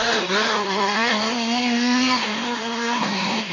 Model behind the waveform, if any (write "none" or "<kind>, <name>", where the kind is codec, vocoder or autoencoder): codec, SNAC